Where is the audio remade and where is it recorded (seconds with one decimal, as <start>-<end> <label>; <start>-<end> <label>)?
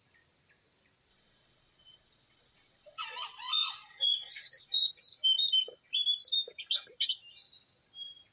0.0-1.1 recorded; 1.1-4.9 remade; 4.9-8.3 recorded